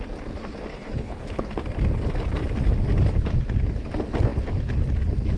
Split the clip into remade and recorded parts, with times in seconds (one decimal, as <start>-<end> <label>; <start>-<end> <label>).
0.0-0.7 recorded; 0.7-1.5 remade; 1.5-5.4 recorded